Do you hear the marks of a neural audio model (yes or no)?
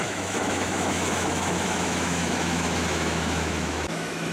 yes